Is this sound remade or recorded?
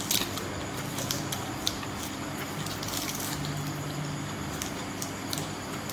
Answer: recorded